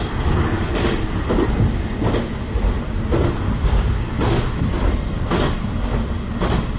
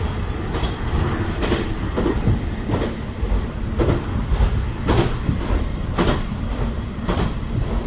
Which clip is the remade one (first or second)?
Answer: second